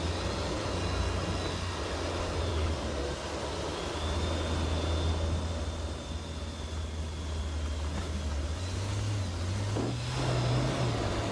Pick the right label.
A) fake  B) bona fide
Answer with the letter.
B